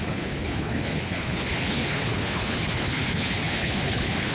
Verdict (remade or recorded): remade